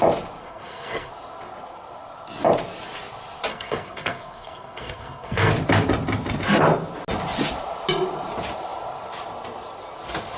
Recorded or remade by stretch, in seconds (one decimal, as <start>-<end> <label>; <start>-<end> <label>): 0.0-0.4 recorded; 0.4-1.1 remade; 1.1-3.5 recorded; 3.5-5.5 remade; 5.5-10.4 recorded